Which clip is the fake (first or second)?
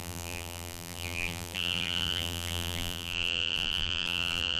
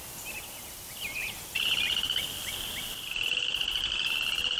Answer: first